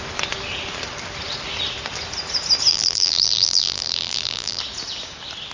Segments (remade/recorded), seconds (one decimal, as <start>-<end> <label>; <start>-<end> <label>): 0.0-2.7 recorded; 2.7-4.6 remade; 4.6-5.5 recorded